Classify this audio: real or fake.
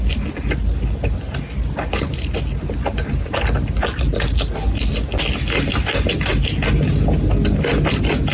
real